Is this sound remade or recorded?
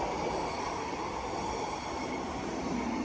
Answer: recorded